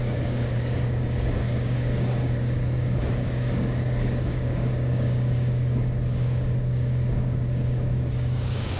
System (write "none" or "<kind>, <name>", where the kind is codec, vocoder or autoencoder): codec, DAC